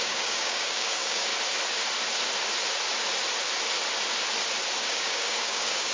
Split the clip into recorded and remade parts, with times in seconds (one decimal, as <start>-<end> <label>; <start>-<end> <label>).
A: 0.0-1.3 remade; 1.3-4.8 recorded; 4.8-5.9 remade